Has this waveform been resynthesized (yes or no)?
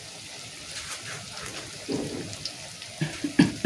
no